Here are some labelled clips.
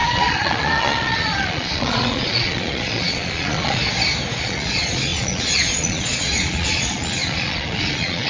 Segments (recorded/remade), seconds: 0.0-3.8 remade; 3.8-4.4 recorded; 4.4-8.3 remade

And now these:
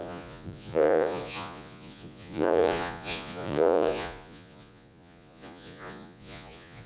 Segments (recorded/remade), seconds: 0.0-6.9 remade

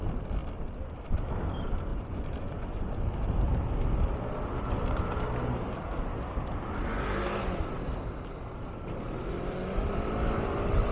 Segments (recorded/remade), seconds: 0.0-1.9 recorded; 1.9-2.9 remade; 2.9-10.9 recorded

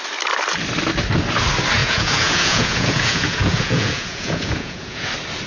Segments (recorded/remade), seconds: 0.0-1.8 recorded; 1.8-5.1 remade; 5.1-5.5 recorded

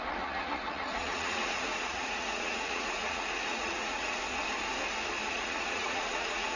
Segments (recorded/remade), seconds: 0.0-4.2 remade; 4.2-5.3 recorded; 5.3-6.6 remade